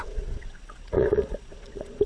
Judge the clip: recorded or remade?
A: remade